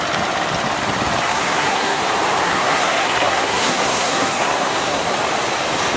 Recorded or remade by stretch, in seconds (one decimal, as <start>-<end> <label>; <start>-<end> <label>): 0.0-1.3 recorded; 1.3-2.0 remade; 2.0-2.4 recorded; 2.4-5.1 remade; 5.1-6.0 recorded